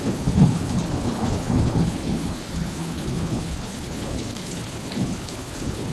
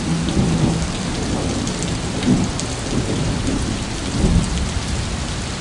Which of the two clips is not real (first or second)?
first